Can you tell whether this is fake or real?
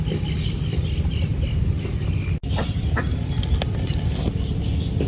real